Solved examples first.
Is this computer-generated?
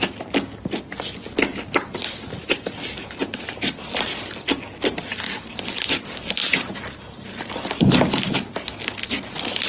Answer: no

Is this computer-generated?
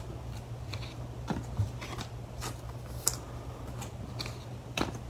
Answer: no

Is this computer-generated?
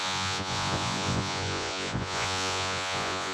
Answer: yes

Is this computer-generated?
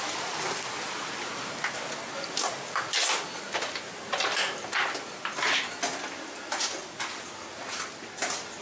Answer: no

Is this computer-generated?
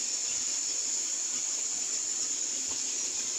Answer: no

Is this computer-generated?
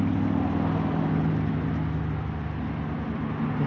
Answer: no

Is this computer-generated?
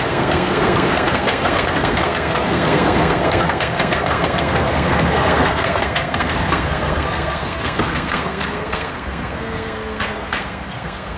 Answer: yes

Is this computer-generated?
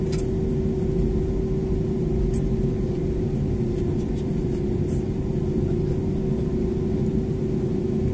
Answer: no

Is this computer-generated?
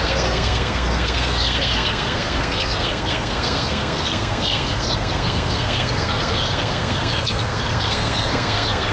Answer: yes